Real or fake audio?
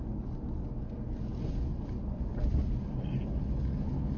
real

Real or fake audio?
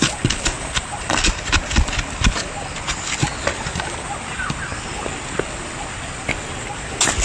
real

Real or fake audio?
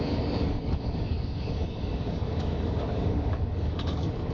fake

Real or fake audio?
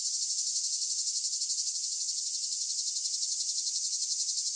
real